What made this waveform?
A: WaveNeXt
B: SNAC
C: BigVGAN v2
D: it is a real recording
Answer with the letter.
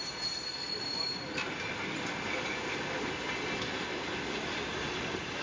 D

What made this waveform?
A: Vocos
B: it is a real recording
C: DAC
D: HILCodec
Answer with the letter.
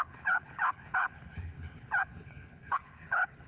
D